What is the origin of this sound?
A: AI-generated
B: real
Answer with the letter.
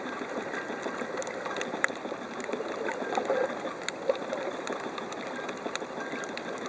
B